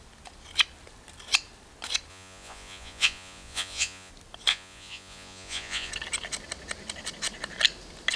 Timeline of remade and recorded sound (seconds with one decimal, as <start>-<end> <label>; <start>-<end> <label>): 0.0-2.1 recorded; 2.1-4.1 remade; 4.1-4.5 recorded; 4.5-5.9 remade; 5.9-8.2 recorded